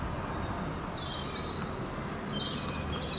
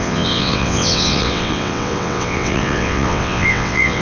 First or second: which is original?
first